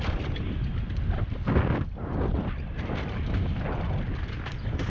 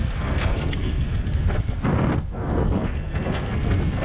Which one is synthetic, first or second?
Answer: second